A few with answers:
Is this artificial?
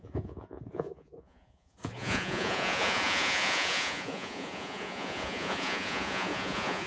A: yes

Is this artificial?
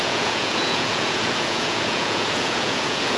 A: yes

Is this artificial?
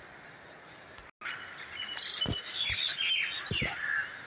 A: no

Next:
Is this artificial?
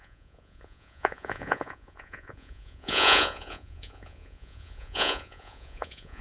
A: yes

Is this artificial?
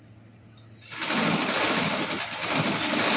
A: no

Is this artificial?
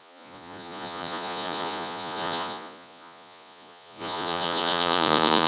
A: yes